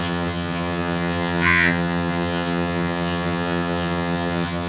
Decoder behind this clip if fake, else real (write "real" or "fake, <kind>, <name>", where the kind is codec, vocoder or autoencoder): fake, vocoder, HiFi-GAN